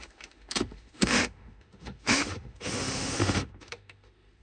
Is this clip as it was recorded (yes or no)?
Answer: no